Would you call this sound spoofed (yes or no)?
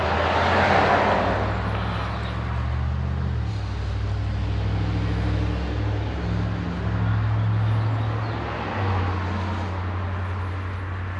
no